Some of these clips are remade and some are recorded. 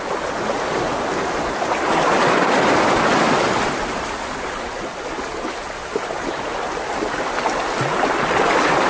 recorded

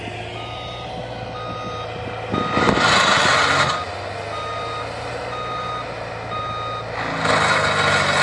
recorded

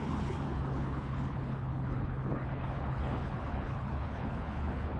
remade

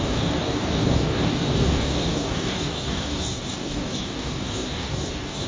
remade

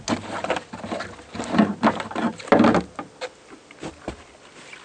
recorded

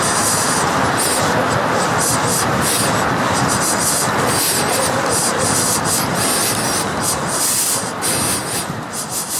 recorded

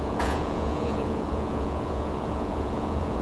remade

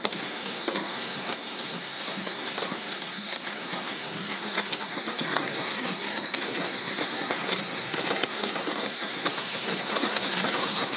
remade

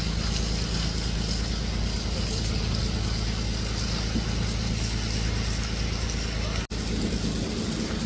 recorded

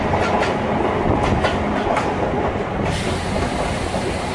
recorded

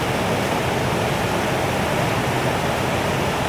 recorded